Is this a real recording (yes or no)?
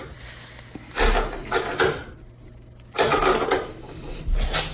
yes